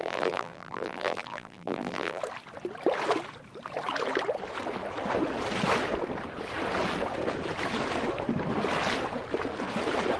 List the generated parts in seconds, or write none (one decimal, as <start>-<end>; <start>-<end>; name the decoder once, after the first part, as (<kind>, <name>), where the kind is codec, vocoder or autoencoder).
0.0-2.2 (vocoder, BigVGAN v2)